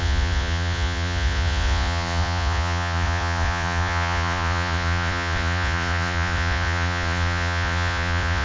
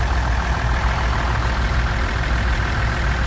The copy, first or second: first